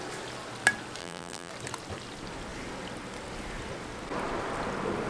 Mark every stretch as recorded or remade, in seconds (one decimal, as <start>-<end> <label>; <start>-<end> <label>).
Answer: 0.0-1.0 recorded; 1.0-1.5 remade; 1.5-5.1 recorded